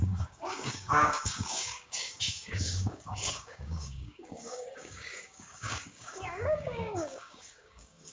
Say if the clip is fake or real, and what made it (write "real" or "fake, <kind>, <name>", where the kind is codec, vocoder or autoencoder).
fake, codec, DAC